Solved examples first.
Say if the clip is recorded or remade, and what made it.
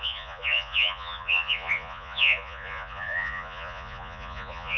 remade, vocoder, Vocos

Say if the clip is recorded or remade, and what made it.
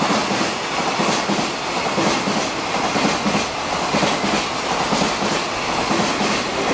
recorded